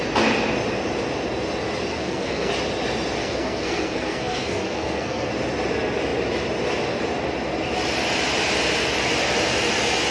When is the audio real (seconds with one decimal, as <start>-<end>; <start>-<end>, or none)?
0.0-1.9; 2.5-3.2; 5.3-10.1